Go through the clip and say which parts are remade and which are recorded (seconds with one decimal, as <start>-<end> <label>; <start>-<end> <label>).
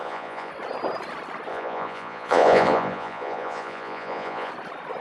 0.0-0.5 remade; 0.5-1.5 recorded; 1.5-4.5 remade; 4.5-5.0 recorded